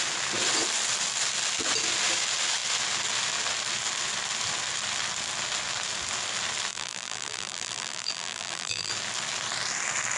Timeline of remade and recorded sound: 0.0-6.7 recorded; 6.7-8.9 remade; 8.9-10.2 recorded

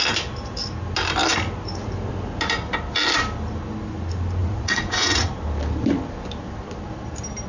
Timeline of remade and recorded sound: 0.0-4.4 recorded; 4.4-5.3 remade; 5.3-7.5 recorded

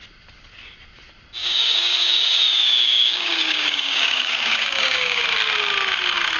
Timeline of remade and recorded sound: 0.0-1.4 recorded; 1.4-5.2 remade; 5.2-6.4 recorded

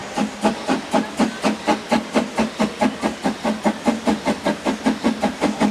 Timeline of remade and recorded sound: 0.0-1.7 recorded; 1.7-3.2 remade; 3.2-5.7 recorded

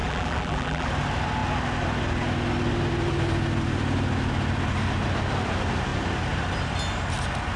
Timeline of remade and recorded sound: 0.0-0.9 remade; 0.9-7.6 recorded

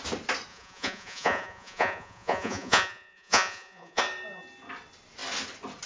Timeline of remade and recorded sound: 0.0-0.5 recorded; 0.5-4.0 remade; 4.0-5.9 recorded

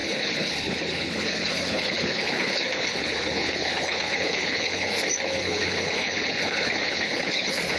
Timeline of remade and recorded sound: 0.0-7.8 remade

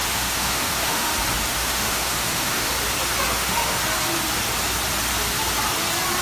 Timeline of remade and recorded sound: 0.0-1.1 remade; 1.1-1.5 recorded; 1.5-2.7 remade; 2.7-3.3 recorded; 3.3-3.8 remade; 3.8-6.2 recorded